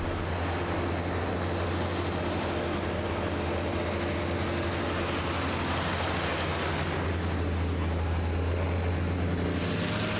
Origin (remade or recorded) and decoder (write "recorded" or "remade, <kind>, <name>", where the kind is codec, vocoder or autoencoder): recorded